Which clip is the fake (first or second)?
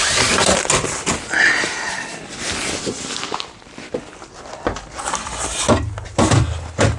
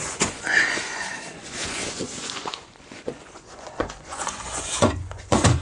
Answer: second